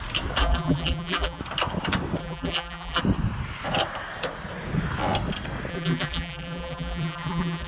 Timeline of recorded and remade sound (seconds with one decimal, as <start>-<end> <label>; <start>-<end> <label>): 0.0-0.4 recorded; 0.4-1.4 remade; 1.4-2.2 recorded; 2.2-3.0 remade; 3.0-5.7 recorded; 5.7-7.7 remade